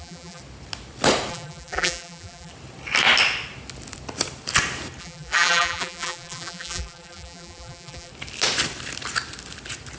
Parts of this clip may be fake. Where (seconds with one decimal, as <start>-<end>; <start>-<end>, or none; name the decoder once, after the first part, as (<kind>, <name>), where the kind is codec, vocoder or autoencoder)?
0.0-0.4 (vocoder, BigVGAN v2); 1.3-2.5; 5.0-8.1